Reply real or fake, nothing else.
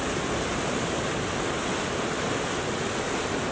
real